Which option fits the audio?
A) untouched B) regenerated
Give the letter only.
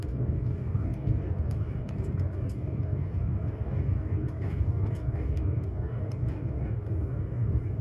B